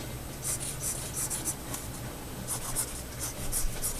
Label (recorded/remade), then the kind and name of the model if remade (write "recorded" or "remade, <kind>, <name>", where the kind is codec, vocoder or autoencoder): recorded